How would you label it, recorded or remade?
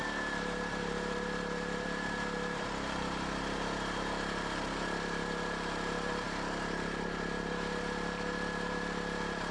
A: remade